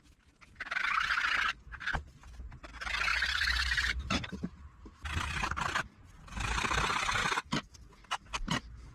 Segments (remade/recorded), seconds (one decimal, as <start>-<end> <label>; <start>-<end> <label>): 0.0-3.1 recorded; 3.1-5.6 remade; 5.6-8.9 recorded